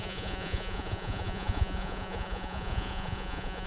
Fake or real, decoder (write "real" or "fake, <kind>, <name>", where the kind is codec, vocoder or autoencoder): fake, vocoder, Vocos